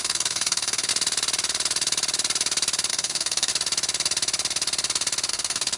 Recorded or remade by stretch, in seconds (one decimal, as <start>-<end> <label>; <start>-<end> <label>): 0.0-0.9 remade; 0.9-2.9 recorded; 2.9-3.5 remade; 3.5-5.3 recorded; 5.3-5.8 remade